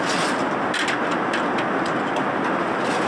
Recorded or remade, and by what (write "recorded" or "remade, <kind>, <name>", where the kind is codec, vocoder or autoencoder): recorded